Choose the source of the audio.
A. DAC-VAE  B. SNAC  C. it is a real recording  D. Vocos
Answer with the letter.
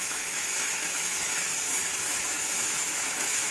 A